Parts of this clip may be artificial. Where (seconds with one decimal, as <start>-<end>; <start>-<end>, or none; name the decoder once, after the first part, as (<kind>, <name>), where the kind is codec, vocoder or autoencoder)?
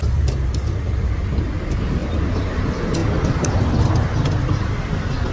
none